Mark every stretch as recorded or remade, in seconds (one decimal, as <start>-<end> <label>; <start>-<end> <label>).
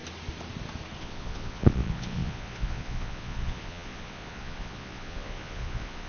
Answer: 0.0-1.0 recorded; 1.0-6.1 remade